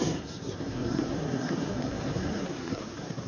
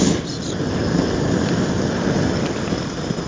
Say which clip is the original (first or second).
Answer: second